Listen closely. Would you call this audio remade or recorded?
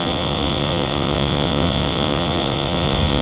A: remade